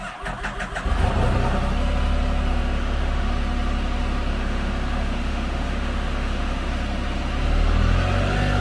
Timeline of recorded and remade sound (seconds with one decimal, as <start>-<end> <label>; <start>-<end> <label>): 0.0-2.5 recorded; 2.5-3.3 remade; 3.3-4.3 recorded; 4.3-6.7 remade; 6.7-8.6 recorded